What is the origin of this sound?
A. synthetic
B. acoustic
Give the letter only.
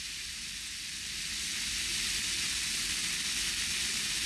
B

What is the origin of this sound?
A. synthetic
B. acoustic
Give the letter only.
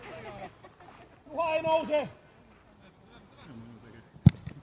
B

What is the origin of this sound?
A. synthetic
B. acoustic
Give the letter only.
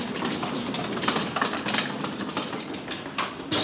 B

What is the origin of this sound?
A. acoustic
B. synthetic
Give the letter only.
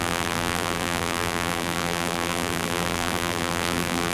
B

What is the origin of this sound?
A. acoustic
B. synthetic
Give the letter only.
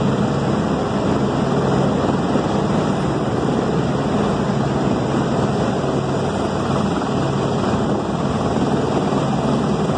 A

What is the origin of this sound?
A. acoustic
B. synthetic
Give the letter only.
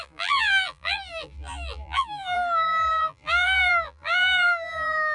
B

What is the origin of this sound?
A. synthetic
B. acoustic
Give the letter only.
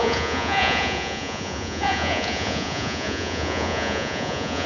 A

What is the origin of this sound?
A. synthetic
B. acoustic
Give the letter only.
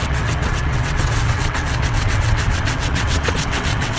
A